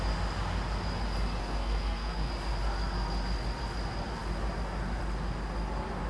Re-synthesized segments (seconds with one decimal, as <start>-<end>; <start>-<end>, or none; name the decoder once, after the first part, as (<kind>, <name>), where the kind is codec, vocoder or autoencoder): 1.4-2.3 (codec, SNAC)